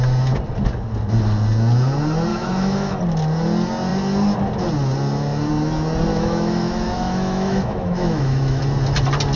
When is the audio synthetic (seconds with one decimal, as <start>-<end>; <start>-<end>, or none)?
2.3-3.0; 6.1-8.6